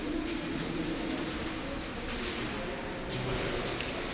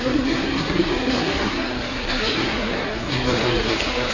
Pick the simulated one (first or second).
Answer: second